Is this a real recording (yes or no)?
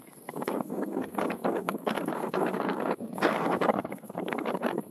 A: no